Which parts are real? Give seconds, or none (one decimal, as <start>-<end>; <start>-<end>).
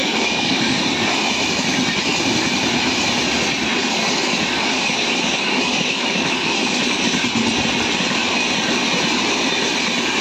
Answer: 0.8-3.8; 6.8-10.2